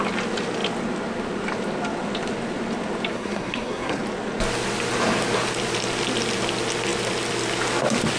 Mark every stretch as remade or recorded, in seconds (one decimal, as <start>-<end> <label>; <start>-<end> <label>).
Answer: 0.0-3.1 recorded; 3.1-4.0 remade; 4.0-8.2 recorded